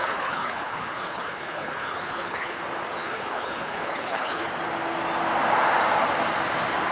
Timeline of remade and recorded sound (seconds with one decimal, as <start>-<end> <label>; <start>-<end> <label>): 0.0-2.6 remade; 2.6-3.0 recorded; 3.0-4.5 remade; 4.5-6.9 recorded